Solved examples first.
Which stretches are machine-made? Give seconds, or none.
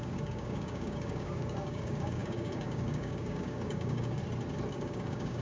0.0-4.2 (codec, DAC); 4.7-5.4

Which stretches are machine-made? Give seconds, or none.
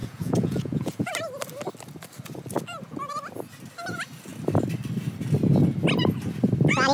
0.0-1.1 (vocoder, Vocos)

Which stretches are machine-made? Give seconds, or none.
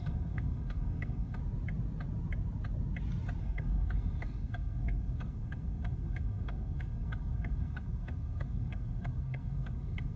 0.0-1.4 (codec, SNAC); 3.4-10.2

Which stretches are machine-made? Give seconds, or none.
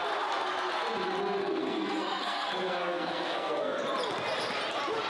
1.4-3.8 (codec, SNAC)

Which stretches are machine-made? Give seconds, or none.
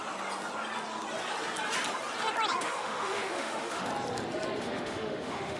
2.6-3.9 (autoencoder, DAC-VAE); 4.6-5.6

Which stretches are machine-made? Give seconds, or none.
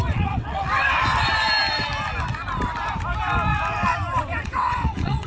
0.0-1.0 (vocoder, WaveNeXt); 4.2-5.3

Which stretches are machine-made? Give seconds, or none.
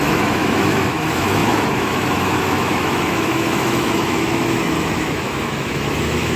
0.0-6.4 (autoencoder, DAC-VAE)